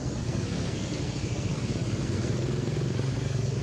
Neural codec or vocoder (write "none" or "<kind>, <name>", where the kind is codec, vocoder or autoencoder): codec, SNAC